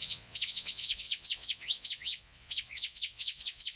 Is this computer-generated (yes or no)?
yes